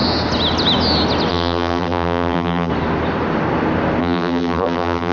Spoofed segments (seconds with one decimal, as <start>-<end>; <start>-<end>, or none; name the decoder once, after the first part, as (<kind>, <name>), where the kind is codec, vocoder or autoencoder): 1.3-2.7 (vocoder, BigVGAN v2); 4.0-5.1